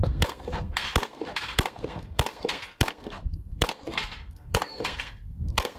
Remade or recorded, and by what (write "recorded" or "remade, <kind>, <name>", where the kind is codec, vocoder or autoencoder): remade, codec, SNAC